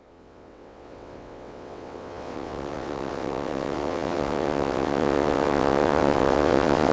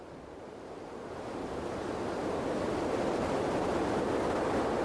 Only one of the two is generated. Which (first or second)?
first